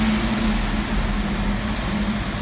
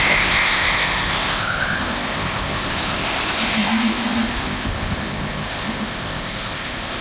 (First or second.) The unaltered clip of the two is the first